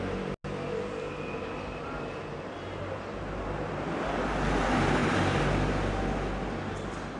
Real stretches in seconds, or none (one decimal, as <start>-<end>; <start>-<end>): 0.0-7.2